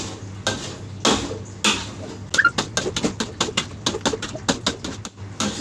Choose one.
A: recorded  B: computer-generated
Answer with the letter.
A